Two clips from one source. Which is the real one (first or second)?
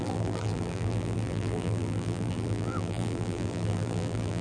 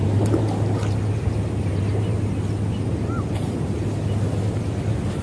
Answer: second